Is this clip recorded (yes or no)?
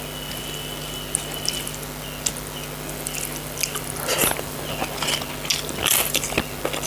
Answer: yes